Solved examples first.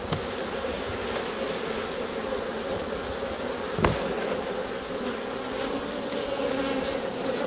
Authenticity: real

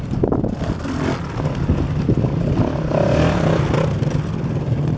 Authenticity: real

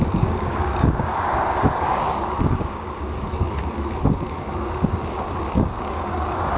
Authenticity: fake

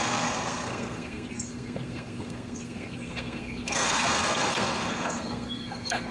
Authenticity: fake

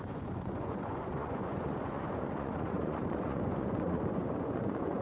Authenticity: fake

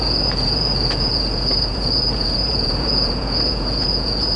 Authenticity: fake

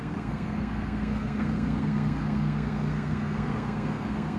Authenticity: fake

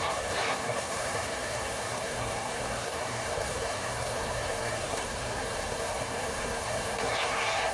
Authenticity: fake